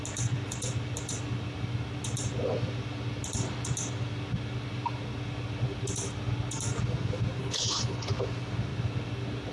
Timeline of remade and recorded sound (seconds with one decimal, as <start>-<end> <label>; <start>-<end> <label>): 0.0-7.4 recorded; 7.4-8.1 remade; 8.1-9.5 recorded